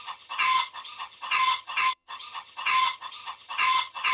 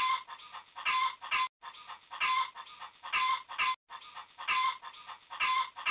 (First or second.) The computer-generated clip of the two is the first